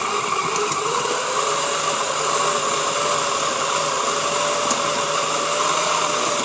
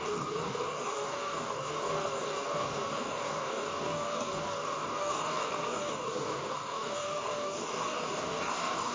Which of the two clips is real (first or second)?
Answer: first